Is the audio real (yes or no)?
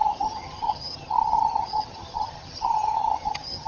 no